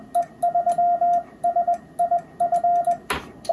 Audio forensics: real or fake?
real